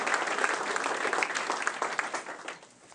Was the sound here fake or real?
real